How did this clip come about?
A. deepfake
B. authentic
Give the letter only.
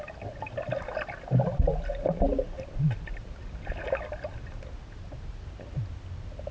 B